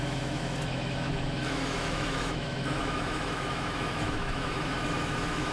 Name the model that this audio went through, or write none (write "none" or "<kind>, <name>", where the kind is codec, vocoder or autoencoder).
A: autoencoder, DAC-VAE